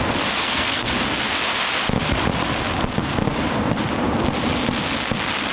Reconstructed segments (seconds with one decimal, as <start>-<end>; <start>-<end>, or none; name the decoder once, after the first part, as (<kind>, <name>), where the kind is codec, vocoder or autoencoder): 0.4-0.9 (codec, SNAC)